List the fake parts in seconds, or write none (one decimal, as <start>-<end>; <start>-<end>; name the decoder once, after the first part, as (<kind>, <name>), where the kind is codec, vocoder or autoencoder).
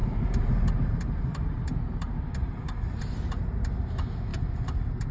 0.0-3.1 (vocoder, BigVGAN v2); 4.3-5.1